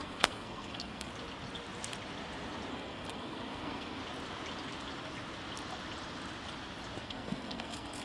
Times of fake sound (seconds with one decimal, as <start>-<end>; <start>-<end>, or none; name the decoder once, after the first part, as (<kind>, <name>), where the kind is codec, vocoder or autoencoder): 0.0-1.1 (codec, SNAC); 2.7-4.0; 7.0-8.0